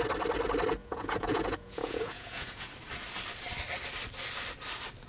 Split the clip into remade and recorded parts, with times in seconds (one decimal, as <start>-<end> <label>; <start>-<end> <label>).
0.0-0.8 recorded; 0.8-2.7 remade; 2.7-5.1 recorded